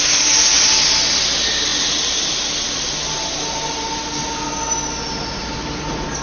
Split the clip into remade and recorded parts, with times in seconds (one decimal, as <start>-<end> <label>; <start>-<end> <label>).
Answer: 0.0-6.2 recorded